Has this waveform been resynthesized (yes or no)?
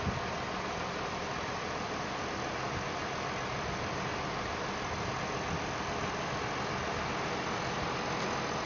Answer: no